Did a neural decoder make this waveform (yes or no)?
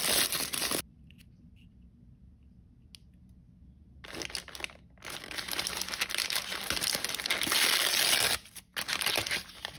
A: no